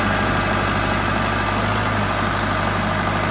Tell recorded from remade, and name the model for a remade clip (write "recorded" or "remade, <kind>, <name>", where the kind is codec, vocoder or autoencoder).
recorded